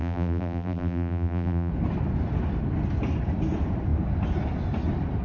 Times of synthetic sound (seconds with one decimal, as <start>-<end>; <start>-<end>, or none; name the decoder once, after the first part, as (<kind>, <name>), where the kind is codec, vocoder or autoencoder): 0.0-1.7 (vocoder, BigVGAN v2)